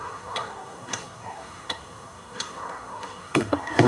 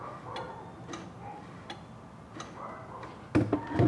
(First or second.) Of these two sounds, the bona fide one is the second